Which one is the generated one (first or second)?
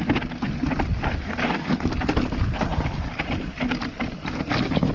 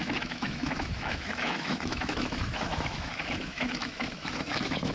second